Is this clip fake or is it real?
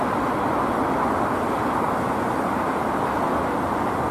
real